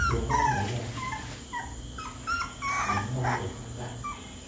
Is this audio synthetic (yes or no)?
no